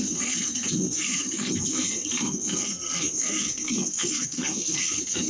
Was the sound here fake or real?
fake